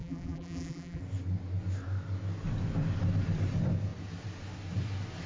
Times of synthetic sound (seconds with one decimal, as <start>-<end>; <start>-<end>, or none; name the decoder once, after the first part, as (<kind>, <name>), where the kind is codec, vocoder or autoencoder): 0.0-1.0 (vocoder, BigVGAN v2)